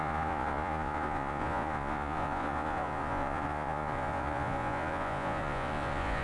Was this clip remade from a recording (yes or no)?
yes